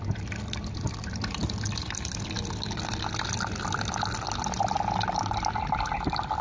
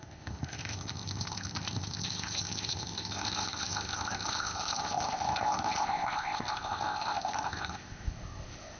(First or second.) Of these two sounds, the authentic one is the first